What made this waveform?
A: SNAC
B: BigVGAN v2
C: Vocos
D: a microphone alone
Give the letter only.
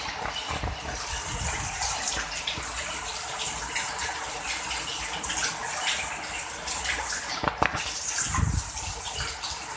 D